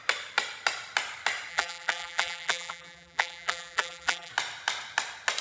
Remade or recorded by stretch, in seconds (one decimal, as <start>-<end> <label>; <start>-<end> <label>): 0.0-1.5 recorded; 1.5-4.3 remade; 4.3-5.4 recorded

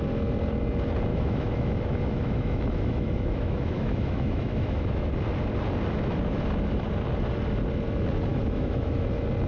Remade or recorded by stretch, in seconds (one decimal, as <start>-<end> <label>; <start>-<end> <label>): 0.0-1.1 recorded; 1.1-5.1 remade; 5.1-8.3 recorded; 8.3-9.1 remade; 9.1-9.5 recorded

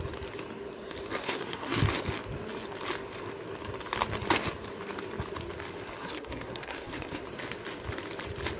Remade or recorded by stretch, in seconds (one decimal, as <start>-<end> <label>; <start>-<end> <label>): 0.0-1.2 recorded; 1.2-1.8 remade; 1.8-6.0 recorded; 6.0-7.2 remade; 7.2-8.6 recorded

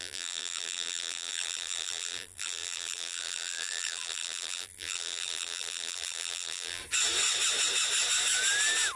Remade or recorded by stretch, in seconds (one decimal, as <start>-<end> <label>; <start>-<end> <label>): 0.0-6.8 remade; 6.8-9.0 recorded